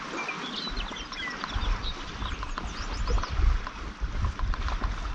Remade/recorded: recorded